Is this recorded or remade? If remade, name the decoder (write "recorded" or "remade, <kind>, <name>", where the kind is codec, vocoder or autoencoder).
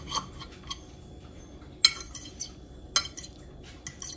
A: recorded